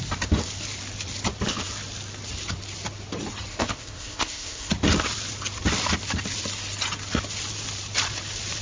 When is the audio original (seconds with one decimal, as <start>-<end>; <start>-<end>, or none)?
0.0-3.5; 4.7-8.6